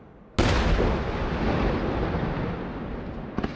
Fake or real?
real